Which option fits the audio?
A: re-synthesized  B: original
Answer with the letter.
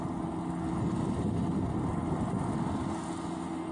B